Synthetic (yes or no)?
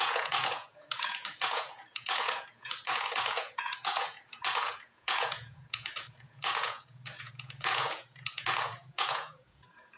yes